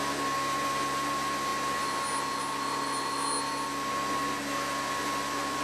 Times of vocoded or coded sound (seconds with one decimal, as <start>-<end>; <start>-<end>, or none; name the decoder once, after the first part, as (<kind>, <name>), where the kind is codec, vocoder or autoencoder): none